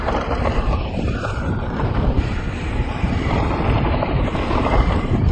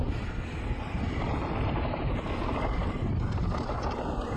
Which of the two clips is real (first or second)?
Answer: second